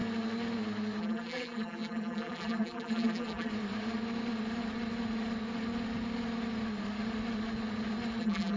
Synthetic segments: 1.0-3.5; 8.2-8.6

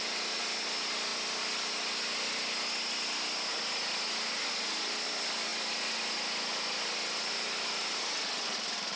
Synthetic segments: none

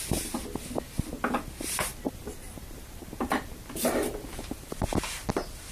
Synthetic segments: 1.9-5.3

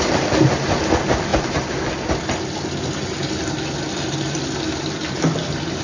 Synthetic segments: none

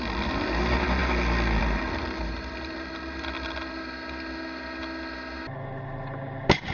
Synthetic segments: none

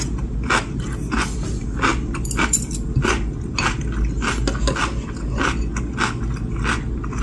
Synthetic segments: none

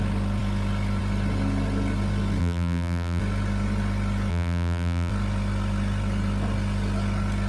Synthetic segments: 2.4-3.2; 4.3-5.1

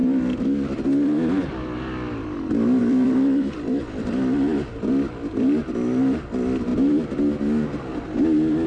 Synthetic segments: 0.0-1.4; 2.8-3.8; 4.5-5.6